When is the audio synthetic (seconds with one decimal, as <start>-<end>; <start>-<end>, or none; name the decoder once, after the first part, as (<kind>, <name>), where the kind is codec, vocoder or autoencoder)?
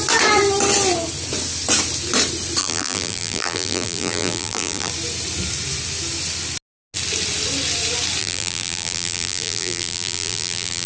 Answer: 2.6-4.9 (vocoder, BigVGAN v2); 8.2-10.9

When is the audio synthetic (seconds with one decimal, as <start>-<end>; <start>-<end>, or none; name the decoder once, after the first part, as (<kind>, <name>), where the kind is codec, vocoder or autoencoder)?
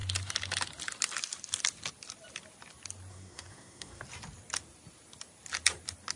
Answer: 3.1-4.0 (codec, SNAC)